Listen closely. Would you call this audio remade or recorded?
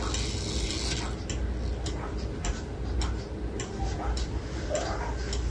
recorded